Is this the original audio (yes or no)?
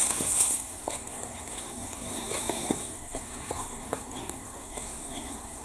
no